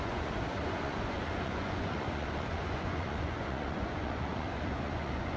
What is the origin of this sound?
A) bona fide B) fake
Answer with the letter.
B